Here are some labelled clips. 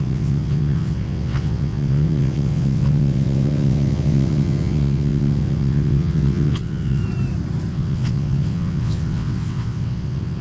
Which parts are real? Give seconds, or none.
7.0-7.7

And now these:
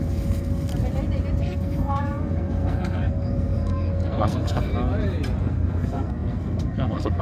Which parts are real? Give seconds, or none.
0.7-1.4; 4.7-5.4

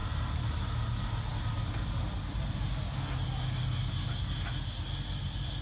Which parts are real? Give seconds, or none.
0.5-5.6

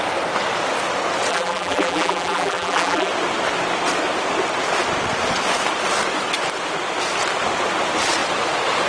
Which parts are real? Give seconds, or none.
0.0-1.3; 3.1-8.9

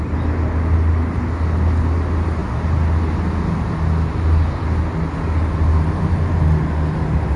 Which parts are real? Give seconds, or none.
0.0-7.4

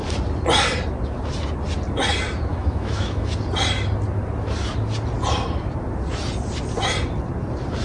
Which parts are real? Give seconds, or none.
0.0-2.5; 3.3-7.8

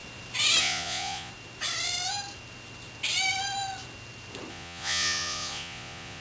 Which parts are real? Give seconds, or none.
0.0-0.6; 1.3-4.5